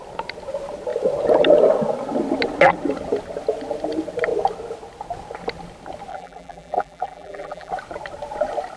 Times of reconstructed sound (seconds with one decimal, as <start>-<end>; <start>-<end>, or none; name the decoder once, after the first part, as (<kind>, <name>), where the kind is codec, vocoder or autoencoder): 6.1-7.7 (vocoder, BigVGAN v2)

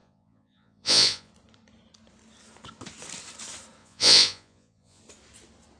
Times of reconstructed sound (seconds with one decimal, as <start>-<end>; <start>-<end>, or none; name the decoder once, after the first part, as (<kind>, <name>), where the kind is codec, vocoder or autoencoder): 0.0-1.3 (vocoder, Vocos); 3.8-5.0

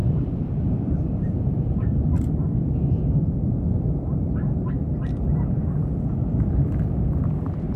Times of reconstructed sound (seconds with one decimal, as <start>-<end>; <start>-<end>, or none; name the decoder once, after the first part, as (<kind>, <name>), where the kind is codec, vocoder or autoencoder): 0.0-2.3 (vocoder, BigVGAN v2)

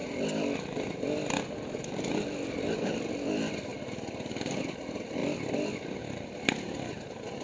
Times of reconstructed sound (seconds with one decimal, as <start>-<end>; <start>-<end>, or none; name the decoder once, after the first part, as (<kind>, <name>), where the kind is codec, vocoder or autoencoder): 3.1-3.7 (vocoder, BigVGAN v2); 4.6-5.2; 6.9-7.4

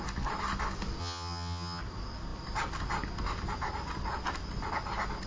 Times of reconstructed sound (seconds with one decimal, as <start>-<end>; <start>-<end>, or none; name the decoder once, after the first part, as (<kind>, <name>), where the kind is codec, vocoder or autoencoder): 1.0-1.8 (vocoder, HiFi-GAN)

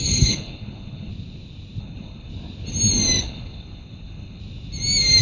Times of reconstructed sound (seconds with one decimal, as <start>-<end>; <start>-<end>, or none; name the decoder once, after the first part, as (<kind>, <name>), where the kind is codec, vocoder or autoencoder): 0.0-1.1 (codec, HILCodec); 1.8-2.3; 3.2-4.4

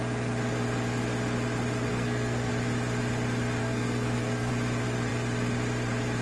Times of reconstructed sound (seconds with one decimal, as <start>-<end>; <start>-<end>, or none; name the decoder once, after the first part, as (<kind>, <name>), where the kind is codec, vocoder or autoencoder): 1.9-2.5 (codec, SNAC); 3.6-4.5